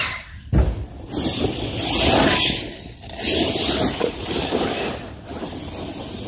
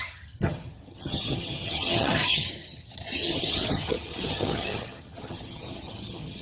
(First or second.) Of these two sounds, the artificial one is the second